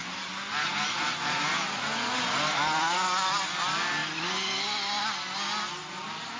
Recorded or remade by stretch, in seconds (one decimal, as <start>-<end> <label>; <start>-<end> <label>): 0.0-6.4 recorded